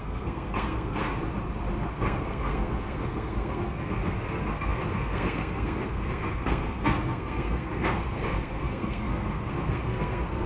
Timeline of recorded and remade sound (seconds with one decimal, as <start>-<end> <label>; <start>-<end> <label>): 0.0-1.0 remade; 1.0-1.9 recorded; 1.9-10.5 remade